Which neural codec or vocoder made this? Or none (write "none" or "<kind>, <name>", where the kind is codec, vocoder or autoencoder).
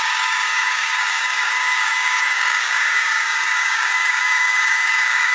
codec, DAC